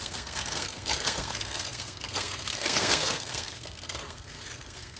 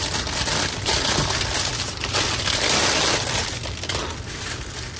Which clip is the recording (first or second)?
second